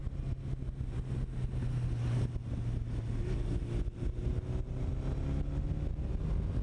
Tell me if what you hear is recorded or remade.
recorded